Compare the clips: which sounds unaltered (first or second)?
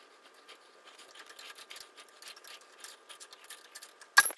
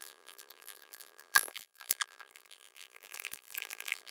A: first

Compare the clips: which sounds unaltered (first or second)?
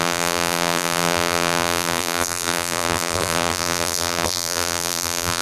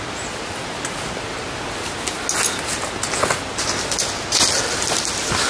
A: second